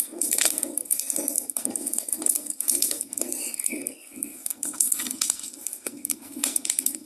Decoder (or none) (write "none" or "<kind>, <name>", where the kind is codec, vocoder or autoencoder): codec, SNAC